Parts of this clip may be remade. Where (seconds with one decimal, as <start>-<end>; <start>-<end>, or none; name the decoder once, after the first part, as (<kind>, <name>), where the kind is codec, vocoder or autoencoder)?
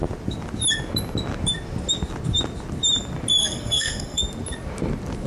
3.4-4.2 (codec, SNAC)